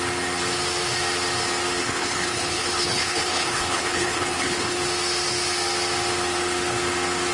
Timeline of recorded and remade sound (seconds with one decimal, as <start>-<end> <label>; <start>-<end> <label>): 0.0-1.8 recorded; 1.8-4.8 remade; 4.8-7.3 recorded